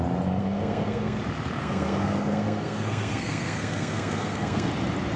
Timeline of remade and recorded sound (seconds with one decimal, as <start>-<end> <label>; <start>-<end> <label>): 0.0-0.4 recorded; 0.4-1.2 remade; 1.2-1.6 recorded; 1.6-4.7 remade; 4.7-5.2 recorded